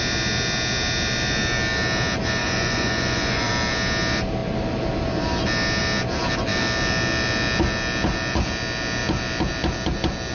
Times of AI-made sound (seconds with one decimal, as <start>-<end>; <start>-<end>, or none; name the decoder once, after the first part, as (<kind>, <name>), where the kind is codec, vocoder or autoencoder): 2.4-3.5 (vocoder, Vocos)